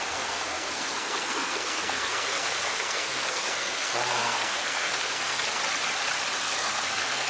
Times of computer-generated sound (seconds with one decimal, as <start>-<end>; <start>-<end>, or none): 0.0-5.6; 6.4-7.3